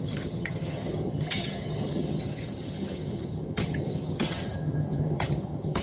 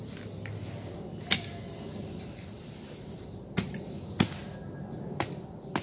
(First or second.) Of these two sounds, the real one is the second